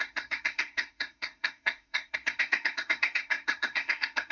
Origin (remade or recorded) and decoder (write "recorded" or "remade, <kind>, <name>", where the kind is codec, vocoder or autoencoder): remade, codec, SNAC